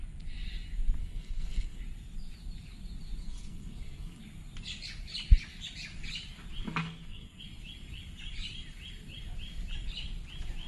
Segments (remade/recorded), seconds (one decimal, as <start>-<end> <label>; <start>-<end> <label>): 0.0-1.0 recorded; 1.0-1.8 remade; 1.8-3.2 recorded; 3.2-4.2 remade; 4.2-6.8 recorded; 6.8-7.4 remade; 7.4-10.7 recorded